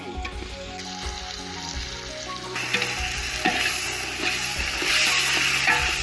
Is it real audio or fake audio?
real